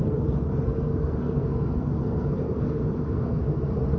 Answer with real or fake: fake